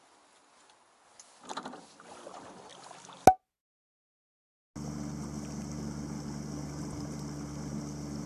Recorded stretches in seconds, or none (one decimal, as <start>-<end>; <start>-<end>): 0.0-8.3